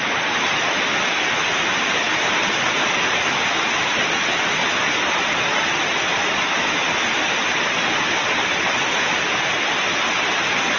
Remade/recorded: recorded